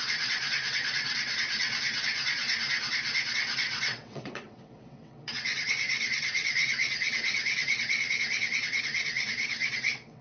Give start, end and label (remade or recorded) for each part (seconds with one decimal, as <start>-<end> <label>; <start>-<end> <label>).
0.0-2.4 remade; 2.4-3.3 recorded; 3.3-10.2 remade